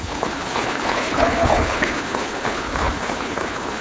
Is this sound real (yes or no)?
no